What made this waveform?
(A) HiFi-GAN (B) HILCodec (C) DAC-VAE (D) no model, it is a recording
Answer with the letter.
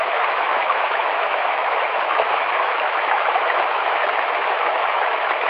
C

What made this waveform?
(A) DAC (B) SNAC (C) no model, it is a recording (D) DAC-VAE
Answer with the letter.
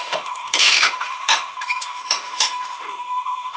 D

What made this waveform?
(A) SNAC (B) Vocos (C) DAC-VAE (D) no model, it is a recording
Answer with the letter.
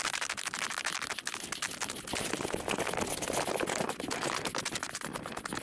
D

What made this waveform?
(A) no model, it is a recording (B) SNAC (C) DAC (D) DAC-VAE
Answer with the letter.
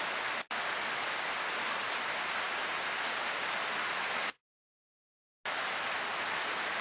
A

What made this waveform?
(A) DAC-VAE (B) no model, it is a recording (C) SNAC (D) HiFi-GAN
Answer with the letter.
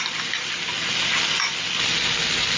B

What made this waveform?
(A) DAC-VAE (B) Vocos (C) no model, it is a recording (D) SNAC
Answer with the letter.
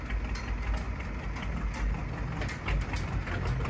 C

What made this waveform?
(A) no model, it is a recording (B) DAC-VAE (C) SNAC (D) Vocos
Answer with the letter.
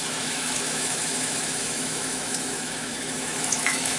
B